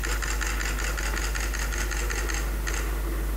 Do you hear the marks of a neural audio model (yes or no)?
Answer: no